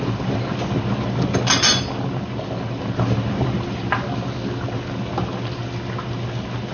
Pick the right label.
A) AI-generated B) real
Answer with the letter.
B